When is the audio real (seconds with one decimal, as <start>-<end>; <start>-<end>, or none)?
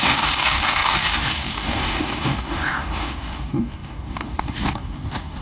none